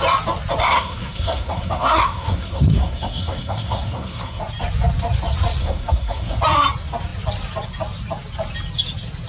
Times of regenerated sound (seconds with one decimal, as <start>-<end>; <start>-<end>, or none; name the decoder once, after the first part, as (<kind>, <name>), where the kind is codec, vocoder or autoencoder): 0.6-4.4 (codec, SNAC); 5.6-6.4